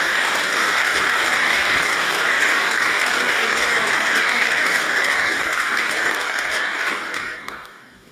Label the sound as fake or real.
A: fake